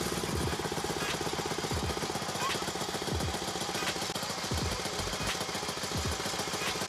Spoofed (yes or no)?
no